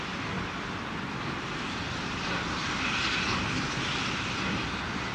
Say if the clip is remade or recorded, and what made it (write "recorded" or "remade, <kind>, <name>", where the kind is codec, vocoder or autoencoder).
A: recorded